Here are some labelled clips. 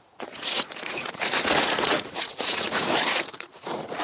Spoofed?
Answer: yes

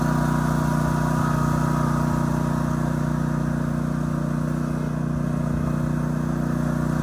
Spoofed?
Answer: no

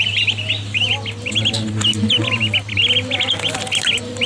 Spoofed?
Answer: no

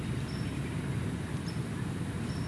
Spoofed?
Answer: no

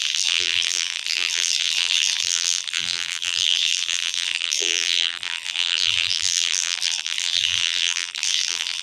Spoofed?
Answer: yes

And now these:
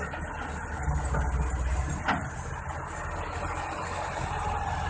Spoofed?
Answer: no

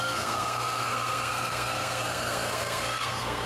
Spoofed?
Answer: yes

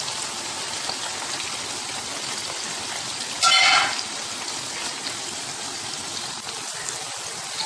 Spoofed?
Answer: no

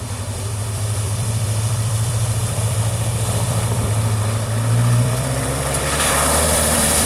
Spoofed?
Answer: yes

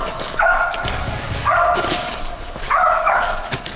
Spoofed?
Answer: yes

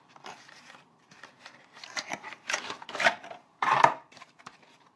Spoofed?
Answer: yes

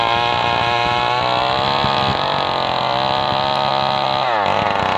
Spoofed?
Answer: no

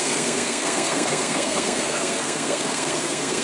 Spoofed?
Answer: yes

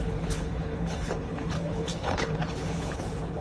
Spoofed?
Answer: yes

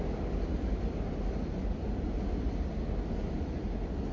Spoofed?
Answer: no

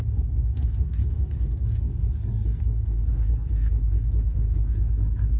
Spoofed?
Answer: yes